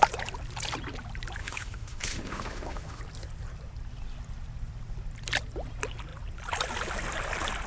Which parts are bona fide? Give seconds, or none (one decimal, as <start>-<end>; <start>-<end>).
0.0-1.4; 3.0-7.7